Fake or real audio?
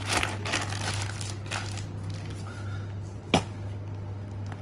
real